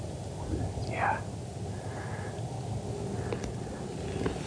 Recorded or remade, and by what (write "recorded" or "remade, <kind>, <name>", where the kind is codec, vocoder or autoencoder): recorded